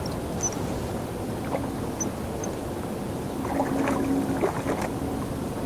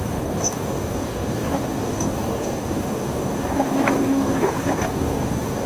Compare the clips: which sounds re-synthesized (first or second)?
second